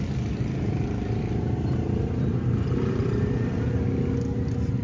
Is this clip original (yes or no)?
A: yes